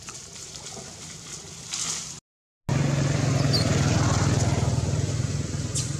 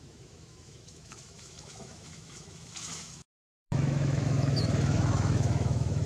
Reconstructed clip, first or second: second